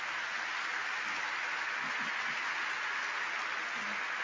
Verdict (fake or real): real